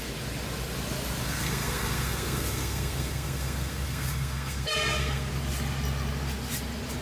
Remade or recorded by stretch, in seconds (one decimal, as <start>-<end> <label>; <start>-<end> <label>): 0.0-1.2 recorded; 1.2-5.3 remade; 5.3-7.0 recorded

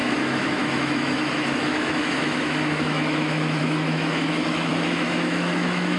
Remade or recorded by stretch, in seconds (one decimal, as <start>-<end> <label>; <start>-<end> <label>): 0.0-6.0 remade

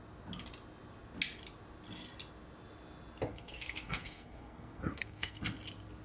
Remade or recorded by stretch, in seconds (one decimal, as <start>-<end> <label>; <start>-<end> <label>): 0.0-3.3 recorded; 3.3-5.4 remade; 5.4-6.0 recorded

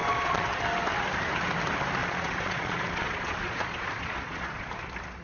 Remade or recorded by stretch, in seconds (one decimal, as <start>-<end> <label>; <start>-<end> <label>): 0.0-0.6 remade; 0.6-2.0 recorded; 2.0-4.7 remade; 4.7-5.2 recorded

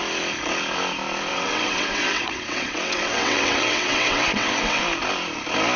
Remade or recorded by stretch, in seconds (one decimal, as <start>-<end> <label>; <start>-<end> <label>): 0.0-1.3 recorded; 1.3-4.8 remade; 4.8-5.8 recorded

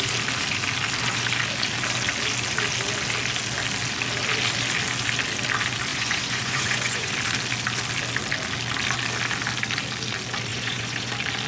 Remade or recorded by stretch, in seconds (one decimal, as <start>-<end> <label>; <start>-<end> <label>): 0.0-5.9 recorded; 5.9-7.1 remade; 7.1-10.5 recorded; 10.5-11.1 remade; 11.1-11.5 recorded

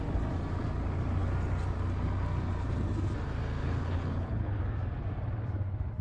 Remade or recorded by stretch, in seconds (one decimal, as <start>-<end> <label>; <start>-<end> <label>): 0.0-3.6 recorded; 3.6-4.6 remade; 4.6-6.0 recorded